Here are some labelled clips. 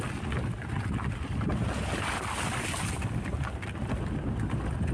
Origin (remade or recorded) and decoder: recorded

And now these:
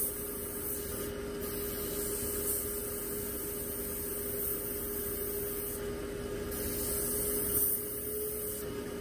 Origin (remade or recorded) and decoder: recorded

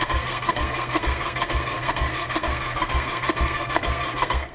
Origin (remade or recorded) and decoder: remade, codec, SNAC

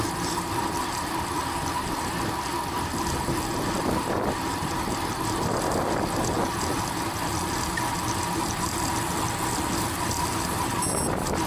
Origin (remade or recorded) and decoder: recorded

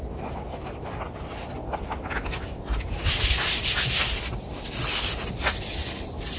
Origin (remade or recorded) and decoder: recorded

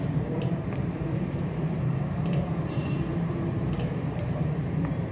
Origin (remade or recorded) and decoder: remade, vocoder, BigVGAN v2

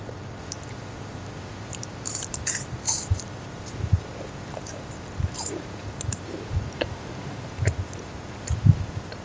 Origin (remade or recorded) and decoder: remade, vocoder, BigVGAN v2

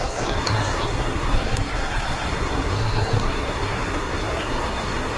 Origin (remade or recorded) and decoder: remade, codec, SNAC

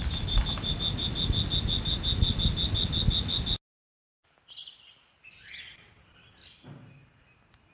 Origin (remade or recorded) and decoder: recorded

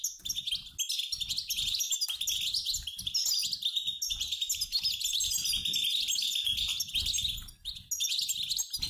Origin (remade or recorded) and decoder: recorded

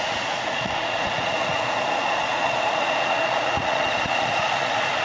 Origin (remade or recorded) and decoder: remade, vocoder, Vocos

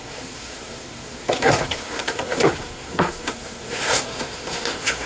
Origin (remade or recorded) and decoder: remade, codec, SNAC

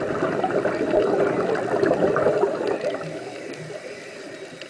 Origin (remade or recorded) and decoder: recorded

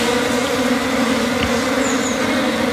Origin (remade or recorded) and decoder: recorded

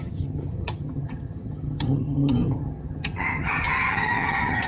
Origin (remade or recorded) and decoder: remade, vocoder, HiFi-GAN